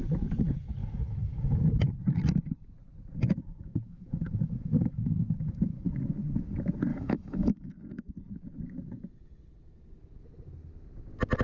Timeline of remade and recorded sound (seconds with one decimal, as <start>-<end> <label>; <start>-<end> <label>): 0.0-0.8 recorded; 0.8-1.8 remade; 1.8-3.5 recorded; 3.5-6.1 remade; 6.1-6.9 recorded; 6.9-7.7 remade; 7.7-11.4 recorded